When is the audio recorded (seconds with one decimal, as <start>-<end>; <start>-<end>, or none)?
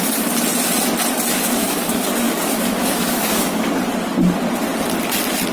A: 0.0-1.3; 3.7-5.5